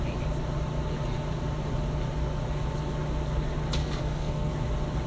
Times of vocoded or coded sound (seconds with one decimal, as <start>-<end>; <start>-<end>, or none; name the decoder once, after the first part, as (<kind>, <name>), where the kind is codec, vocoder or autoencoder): 3.8-4.5 (codec, SNAC)